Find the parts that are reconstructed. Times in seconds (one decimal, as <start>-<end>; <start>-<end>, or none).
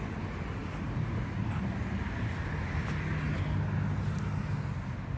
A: none